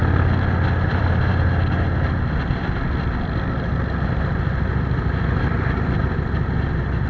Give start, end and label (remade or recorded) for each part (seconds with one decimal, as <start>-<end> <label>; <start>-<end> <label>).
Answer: 0.0-0.9 recorded; 0.9-1.3 remade; 1.3-4.7 recorded; 4.7-7.1 remade